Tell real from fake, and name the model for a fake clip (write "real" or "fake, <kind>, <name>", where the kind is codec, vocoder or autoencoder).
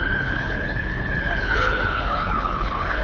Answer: fake, codec, HILCodec